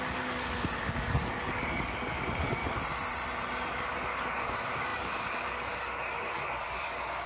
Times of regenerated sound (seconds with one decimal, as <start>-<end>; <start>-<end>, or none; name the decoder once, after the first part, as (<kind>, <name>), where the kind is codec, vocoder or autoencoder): 0.0-2.6 (codec, DAC); 3.7-7.3